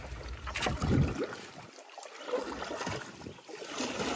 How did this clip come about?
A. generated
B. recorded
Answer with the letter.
B